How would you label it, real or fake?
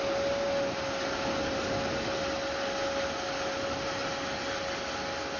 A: real